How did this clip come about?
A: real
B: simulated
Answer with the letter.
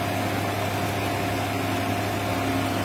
A